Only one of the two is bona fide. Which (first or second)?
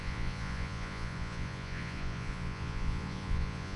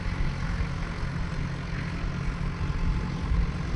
second